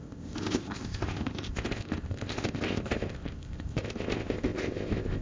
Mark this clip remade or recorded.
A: remade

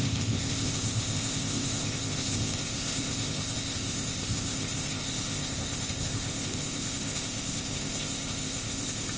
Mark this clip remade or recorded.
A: remade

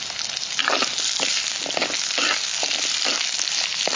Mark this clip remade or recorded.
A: recorded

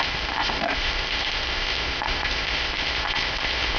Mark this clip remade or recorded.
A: remade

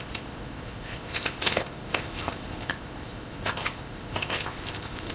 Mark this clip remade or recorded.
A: remade